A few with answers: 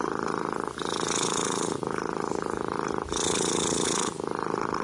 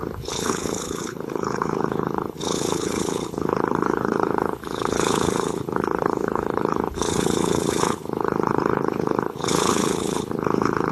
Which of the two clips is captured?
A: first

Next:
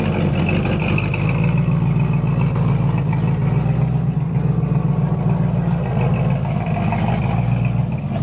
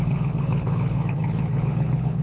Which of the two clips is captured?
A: first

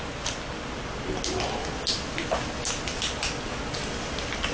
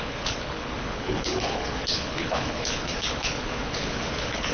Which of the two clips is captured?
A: first